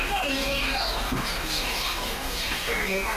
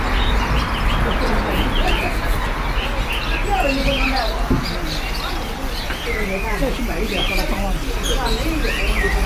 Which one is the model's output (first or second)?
first